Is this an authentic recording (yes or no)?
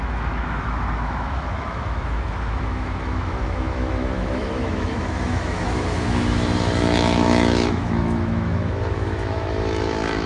no